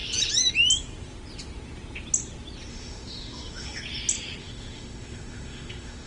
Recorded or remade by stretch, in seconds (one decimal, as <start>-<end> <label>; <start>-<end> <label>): 0.0-2.7 recorded; 2.7-3.8 remade; 3.8-4.4 recorded; 4.4-6.1 remade